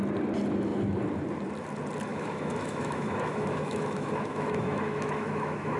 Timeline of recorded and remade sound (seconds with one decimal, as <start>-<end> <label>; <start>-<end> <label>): 0.0-2.1 recorded; 2.1-5.8 remade